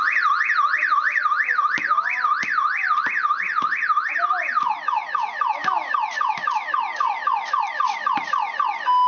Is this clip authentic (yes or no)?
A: yes